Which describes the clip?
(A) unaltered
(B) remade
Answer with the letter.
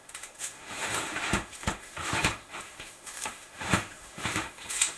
B